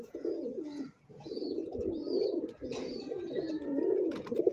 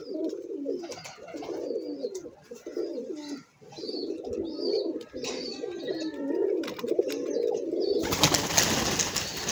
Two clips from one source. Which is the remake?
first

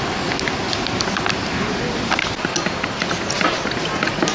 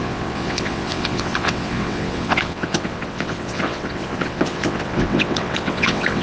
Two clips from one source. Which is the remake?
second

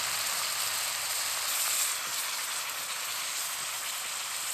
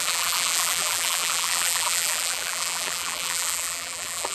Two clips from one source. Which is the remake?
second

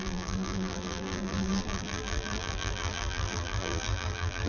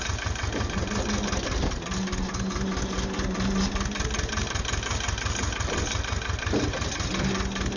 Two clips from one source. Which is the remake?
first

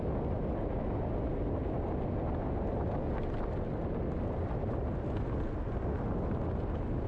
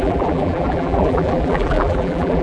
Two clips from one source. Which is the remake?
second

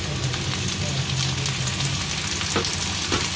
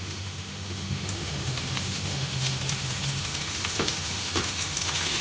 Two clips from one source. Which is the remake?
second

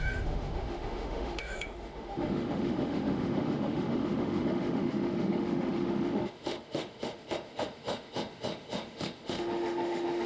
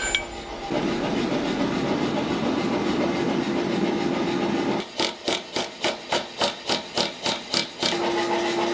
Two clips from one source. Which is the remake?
first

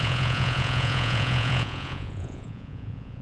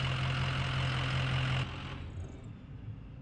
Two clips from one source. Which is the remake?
first